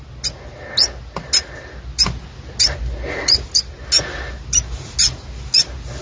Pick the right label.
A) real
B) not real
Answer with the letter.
A